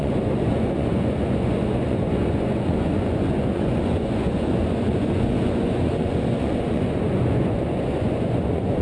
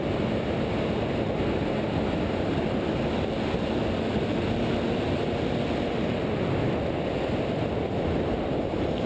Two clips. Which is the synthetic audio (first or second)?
first